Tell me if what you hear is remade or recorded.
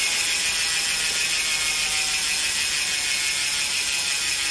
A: recorded